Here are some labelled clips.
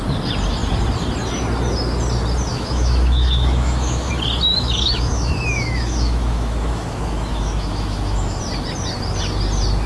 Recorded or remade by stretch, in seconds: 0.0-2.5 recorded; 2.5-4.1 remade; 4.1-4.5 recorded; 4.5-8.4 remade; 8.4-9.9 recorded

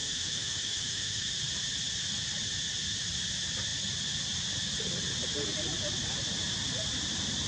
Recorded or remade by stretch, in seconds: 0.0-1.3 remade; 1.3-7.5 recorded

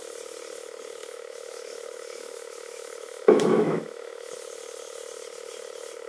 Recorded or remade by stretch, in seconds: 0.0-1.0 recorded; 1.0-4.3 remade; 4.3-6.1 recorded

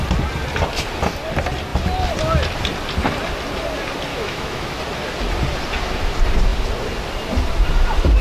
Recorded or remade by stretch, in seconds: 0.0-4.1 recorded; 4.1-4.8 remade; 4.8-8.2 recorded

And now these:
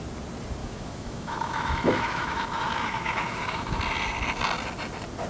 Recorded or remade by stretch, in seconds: 0.0-0.6 recorded; 0.6-3.8 remade; 3.8-5.3 recorded

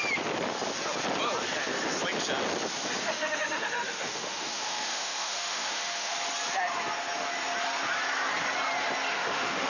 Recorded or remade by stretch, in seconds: 0.0-3.0 recorded; 3.0-6.1 remade; 6.1-9.1 recorded; 9.1-9.7 remade

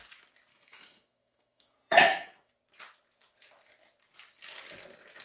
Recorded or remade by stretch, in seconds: 0.0-0.5 recorded; 0.5-2.5 remade; 2.5-5.2 recorded